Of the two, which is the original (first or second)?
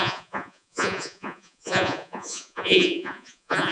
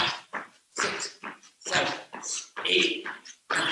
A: second